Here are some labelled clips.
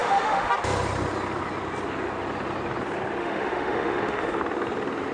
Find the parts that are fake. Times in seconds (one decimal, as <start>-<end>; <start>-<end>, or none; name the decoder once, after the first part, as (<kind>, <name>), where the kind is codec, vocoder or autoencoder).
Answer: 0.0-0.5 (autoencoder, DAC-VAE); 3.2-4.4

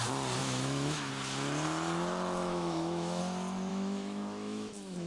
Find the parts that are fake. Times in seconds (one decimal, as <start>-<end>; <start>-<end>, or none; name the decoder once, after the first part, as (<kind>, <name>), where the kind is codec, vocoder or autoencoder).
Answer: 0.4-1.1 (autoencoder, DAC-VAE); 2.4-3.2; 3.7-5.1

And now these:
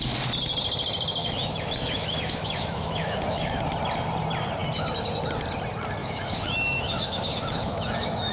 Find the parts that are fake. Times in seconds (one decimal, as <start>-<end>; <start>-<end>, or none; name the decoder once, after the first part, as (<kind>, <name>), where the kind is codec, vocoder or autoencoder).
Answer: 1.2-3.6 (autoencoder, DAC-VAE); 6.0-8.3

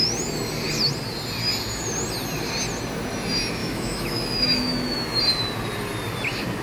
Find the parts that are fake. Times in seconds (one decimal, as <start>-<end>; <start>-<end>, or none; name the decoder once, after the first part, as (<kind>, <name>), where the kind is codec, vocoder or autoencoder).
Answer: 3.6-5.2 (autoencoder, DAC-VAE)